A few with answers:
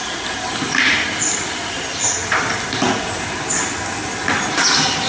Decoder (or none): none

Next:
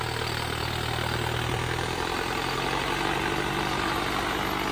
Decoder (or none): none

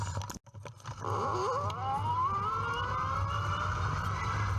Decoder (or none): none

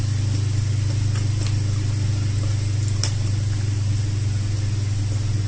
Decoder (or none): none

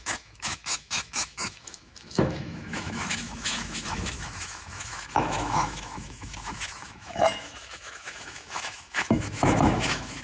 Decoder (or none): autoencoder, DAC-VAE